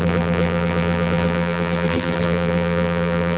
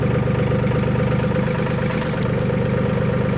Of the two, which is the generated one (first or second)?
first